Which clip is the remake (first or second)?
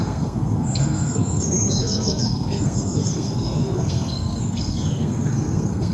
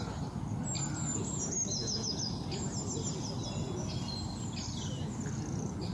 first